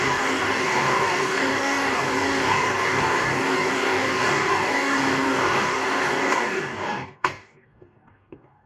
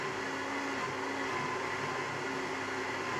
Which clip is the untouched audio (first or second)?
second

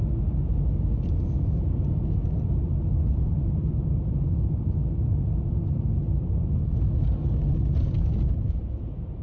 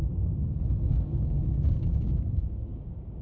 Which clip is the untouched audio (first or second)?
first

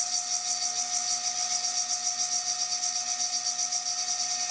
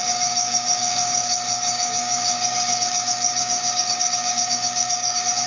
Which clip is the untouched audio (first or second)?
first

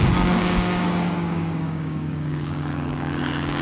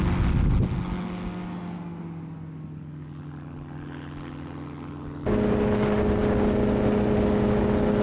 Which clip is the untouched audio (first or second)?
second